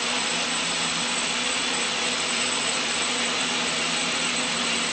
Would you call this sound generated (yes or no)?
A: yes